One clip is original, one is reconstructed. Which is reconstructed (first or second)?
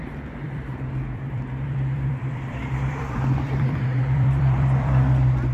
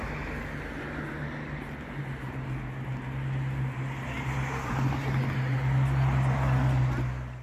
first